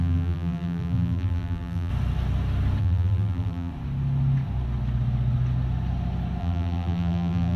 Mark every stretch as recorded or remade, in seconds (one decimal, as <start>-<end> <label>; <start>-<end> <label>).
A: 0.0-1.9 remade; 1.9-2.8 recorded; 2.8-3.7 remade; 3.7-6.4 recorded; 6.4-7.6 remade